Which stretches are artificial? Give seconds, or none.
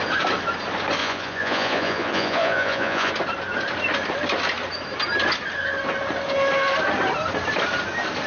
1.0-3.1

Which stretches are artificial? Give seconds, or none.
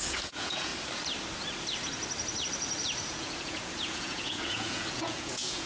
0.0-0.7; 3.1-5.7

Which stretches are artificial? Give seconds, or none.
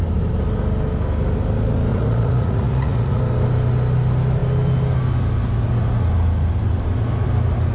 1.9-3.2